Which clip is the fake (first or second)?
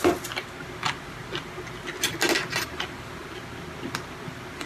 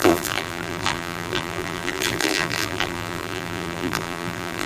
second